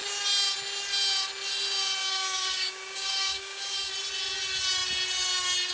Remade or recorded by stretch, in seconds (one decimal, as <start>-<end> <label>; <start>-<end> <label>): 0.0-2.0 recorded; 2.0-3.9 remade; 3.9-5.7 recorded